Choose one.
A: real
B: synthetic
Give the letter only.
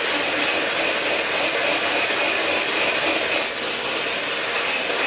A